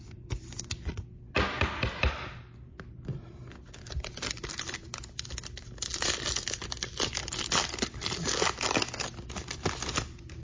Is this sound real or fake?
real